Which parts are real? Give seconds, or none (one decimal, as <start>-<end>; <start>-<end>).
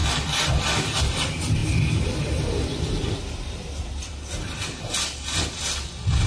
1.0-1.6; 5.4-6.3